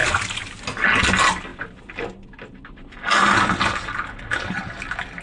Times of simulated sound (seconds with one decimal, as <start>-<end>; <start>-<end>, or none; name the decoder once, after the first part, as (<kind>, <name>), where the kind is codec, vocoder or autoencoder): none